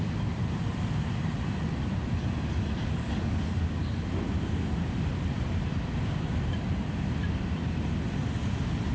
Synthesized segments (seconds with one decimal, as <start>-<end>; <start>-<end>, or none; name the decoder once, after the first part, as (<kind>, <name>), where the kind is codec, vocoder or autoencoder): 2.8-3.8 (codec, DAC)